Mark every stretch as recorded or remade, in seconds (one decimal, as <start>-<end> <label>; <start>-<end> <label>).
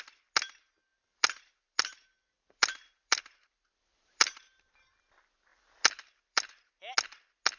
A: 0.0-0.9 recorded; 0.9-5.0 remade; 5.0-5.5 recorded; 5.5-6.5 remade; 6.5-7.6 recorded